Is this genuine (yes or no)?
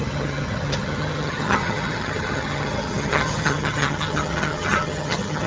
no